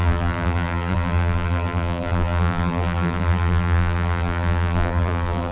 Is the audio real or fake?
fake